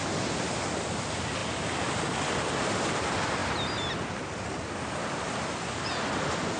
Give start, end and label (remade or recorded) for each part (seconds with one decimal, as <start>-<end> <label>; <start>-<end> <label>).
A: 0.0-6.6 recorded